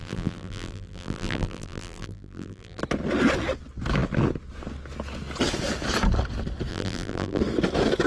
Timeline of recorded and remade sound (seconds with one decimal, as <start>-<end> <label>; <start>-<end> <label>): 0.0-2.8 remade; 2.8-6.7 recorded; 6.7-7.4 remade; 7.4-8.1 recorded